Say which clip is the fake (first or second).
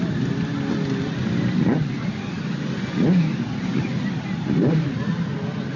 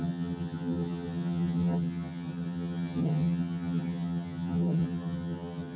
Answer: second